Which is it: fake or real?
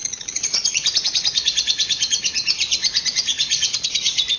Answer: fake